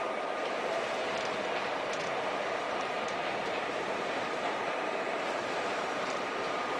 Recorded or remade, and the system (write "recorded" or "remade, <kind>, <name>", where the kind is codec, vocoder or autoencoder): remade, vocoder, BigVGAN v2